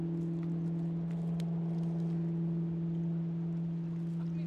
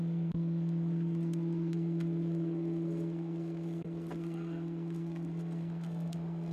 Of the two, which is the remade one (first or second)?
second